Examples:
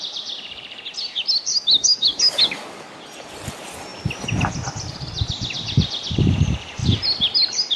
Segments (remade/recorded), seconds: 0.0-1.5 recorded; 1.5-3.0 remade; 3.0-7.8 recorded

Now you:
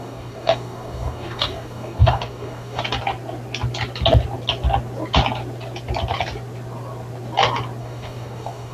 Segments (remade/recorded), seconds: 0.0-2.8 remade; 2.8-7.8 recorded; 7.8-8.7 remade

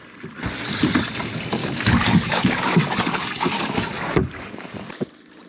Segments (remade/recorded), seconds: 0.0-1.6 recorded; 1.6-4.9 remade; 4.9-5.5 recorded

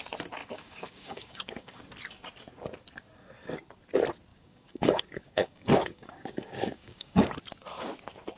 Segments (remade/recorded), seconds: 0.0-0.4 recorded; 0.4-1.8 remade; 1.8-4.3 recorded; 4.3-7.3 remade; 7.3-8.4 recorded

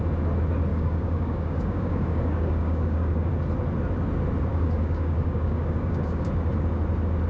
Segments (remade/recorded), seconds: 0.0-0.7 recorded; 0.7-3.3 remade; 3.3-4.5 recorded; 4.5-6.3 remade; 6.3-7.3 recorded

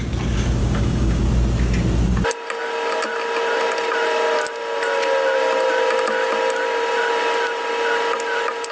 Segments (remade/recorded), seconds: 0.0-0.6 recorded; 0.6-1.2 remade; 1.2-8.7 recorded

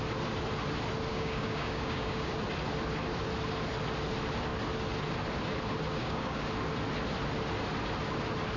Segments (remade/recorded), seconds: 0.0-1.1 recorded; 1.1-2.3 remade; 2.3-6.0 recorded; 6.0-6.5 remade; 6.5-8.6 recorded